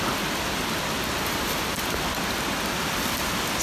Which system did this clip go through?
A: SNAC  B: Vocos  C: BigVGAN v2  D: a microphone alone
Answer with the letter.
C